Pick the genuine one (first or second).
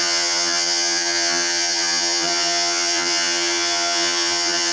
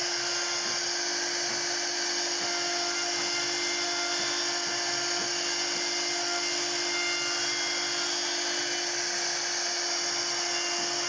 second